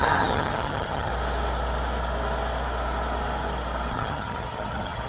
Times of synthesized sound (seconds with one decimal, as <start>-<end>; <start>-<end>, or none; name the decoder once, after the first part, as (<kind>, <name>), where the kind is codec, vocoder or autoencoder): 0.0-1.1 (vocoder, HiFi-GAN); 3.9-5.1